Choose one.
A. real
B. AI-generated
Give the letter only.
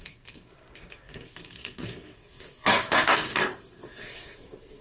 B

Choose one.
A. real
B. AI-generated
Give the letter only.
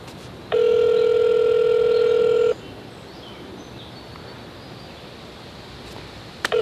A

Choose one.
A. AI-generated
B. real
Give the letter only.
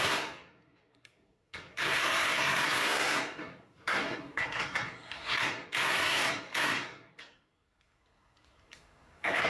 A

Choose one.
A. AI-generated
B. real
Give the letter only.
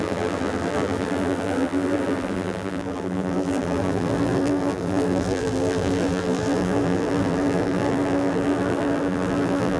A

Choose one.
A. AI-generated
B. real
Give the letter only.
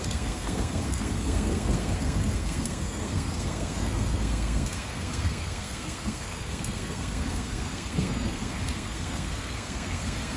A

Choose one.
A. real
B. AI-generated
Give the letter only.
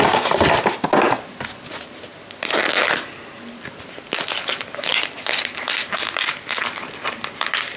A